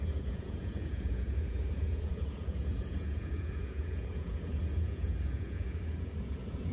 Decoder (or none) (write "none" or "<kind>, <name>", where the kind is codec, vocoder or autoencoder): vocoder, Vocos